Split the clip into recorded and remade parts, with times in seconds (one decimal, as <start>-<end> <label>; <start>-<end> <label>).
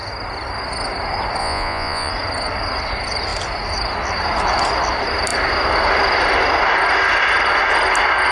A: 0.0-1.4 recorded; 1.4-2.1 remade; 2.1-8.3 recorded